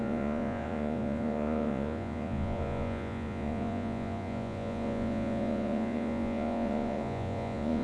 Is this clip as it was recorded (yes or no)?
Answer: no